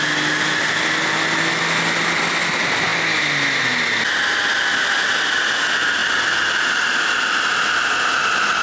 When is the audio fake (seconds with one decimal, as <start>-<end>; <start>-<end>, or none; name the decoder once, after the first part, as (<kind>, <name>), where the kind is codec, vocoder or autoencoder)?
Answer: none